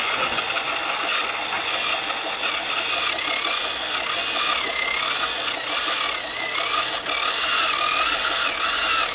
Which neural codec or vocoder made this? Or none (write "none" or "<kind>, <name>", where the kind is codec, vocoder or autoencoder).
vocoder, Vocos